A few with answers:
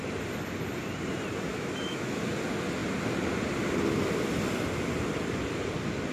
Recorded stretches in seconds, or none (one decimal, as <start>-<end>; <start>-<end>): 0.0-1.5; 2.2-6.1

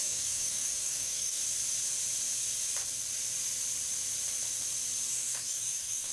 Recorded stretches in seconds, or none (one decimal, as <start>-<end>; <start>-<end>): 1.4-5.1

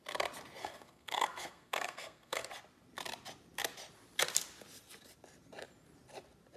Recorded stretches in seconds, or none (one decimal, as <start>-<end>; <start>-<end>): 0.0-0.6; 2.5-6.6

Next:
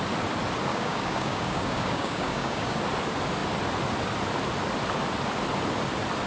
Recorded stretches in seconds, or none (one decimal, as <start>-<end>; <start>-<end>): 0.0-0.7; 2.8-6.3

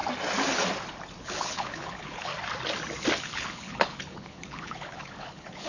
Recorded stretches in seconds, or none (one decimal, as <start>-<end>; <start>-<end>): 0.0-1.2; 2.3-3.2

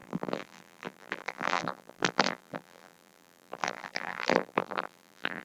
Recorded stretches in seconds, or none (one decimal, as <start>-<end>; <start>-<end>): none